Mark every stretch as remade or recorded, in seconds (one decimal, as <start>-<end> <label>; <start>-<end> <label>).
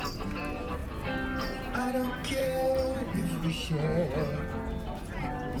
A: 0.0-0.8 remade; 0.8-1.8 recorded; 1.8-3.2 remade; 3.2-5.1 recorded; 5.1-5.6 remade